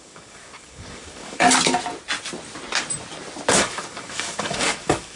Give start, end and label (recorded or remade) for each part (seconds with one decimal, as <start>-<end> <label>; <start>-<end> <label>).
0.0-1.4 remade; 1.4-3.5 recorded; 3.5-5.2 remade